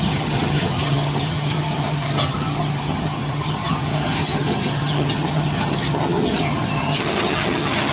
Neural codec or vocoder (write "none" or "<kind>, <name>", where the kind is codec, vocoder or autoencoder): vocoder, HiFi-GAN